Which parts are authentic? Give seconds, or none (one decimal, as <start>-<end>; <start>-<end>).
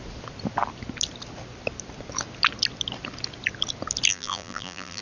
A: 0.0-4.1